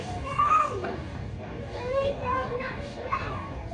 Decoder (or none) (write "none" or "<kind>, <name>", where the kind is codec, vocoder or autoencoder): codec, DAC